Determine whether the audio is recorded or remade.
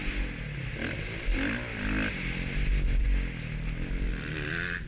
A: recorded